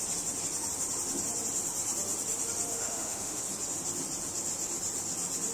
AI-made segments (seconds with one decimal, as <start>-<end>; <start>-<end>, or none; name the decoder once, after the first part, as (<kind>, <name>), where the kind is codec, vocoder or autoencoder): 2.7-3.4 (autoencoder, DAC-VAE)